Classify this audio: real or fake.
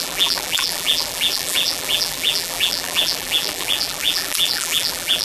fake